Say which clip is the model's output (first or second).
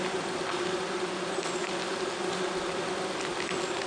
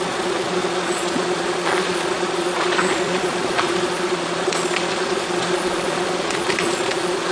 second